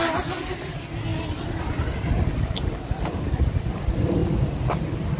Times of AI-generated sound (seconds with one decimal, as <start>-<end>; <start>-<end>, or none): none